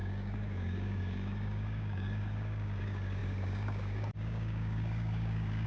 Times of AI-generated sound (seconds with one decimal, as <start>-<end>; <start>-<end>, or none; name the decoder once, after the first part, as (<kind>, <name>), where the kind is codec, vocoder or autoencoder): 0.0-5.7 (codec, DAC)

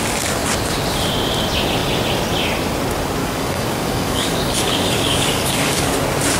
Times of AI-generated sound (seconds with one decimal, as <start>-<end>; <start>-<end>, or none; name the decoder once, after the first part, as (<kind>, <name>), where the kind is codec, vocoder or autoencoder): 3.2-5.9 (codec, DAC)

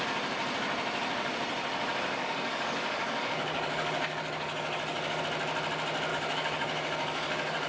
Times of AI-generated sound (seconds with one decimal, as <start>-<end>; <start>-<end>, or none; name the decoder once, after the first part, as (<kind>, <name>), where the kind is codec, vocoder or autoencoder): 2.2-5.2 (codec, DAC); 6.1-7.7

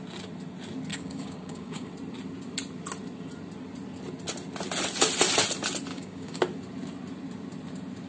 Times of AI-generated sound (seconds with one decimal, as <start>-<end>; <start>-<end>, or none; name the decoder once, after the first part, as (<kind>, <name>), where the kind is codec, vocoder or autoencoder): 0.9-1.9 (codec, DAC); 5.9-6.4

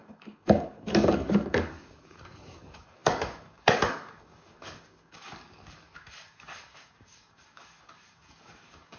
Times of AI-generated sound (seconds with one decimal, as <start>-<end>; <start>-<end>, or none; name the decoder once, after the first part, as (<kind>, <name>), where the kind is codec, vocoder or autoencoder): 0.0-9.0 (codec, DAC)

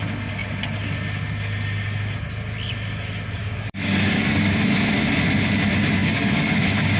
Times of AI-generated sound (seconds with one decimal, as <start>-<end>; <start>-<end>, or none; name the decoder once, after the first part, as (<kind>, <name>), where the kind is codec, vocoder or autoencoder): 3.4-4.9 (codec, DAC); 6.0-7.0